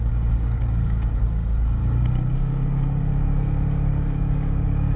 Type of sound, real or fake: fake